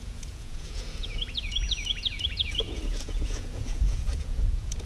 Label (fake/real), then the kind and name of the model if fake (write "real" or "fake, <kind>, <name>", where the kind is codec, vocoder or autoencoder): fake, vocoder, Vocos